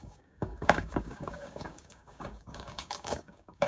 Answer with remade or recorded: remade